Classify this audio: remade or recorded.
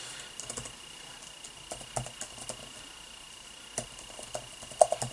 recorded